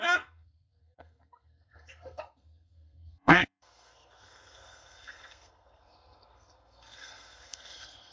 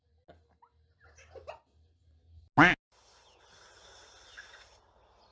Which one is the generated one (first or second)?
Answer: first